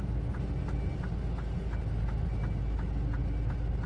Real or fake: real